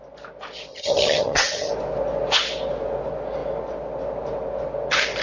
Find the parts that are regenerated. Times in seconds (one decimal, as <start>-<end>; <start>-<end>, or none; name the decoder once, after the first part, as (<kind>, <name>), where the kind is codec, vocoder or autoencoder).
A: 0.7-1.7 (vocoder, HiFi-GAN)